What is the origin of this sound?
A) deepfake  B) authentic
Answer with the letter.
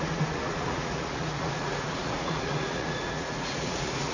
A